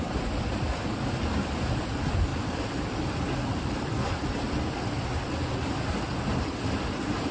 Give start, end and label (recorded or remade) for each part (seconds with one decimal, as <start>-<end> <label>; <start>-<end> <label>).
0.0-7.3 remade